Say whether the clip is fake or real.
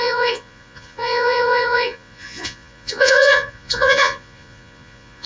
fake